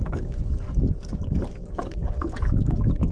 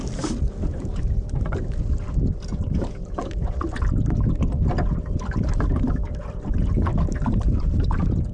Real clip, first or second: second